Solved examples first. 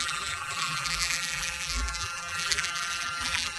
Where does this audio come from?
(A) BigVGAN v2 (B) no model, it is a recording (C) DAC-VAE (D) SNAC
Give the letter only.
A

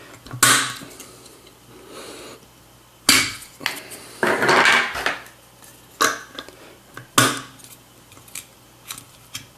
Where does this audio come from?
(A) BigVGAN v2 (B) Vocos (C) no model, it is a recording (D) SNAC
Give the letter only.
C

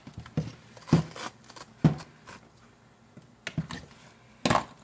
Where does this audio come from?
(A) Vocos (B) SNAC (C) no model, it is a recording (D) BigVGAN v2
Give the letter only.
C